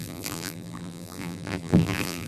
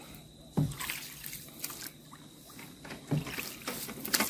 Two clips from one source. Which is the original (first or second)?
second